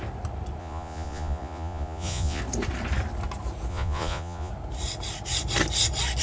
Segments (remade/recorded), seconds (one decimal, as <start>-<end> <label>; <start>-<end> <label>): 0.0-0.6 recorded; 0.6-2.4 remade; 2.4-3.7 recorded; 3.7-4.5 remade; 4.5-6.2 recorded